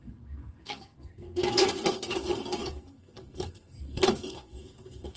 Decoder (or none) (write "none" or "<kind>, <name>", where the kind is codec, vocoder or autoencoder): codec, SNAC